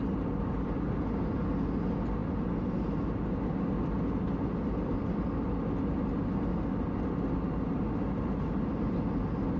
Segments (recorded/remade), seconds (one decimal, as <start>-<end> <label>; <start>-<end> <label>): 0.0-9.6 recorded